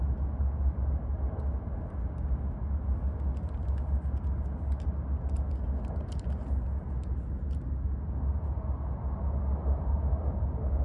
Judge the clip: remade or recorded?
recorded